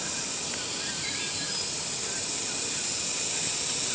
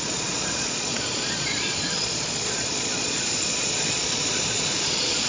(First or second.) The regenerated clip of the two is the second